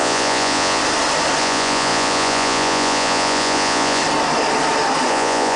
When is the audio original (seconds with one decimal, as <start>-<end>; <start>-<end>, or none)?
0.8-1.4; 4.0-5.1